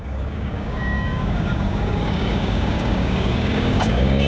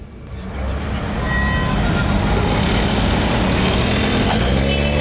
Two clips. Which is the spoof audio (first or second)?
first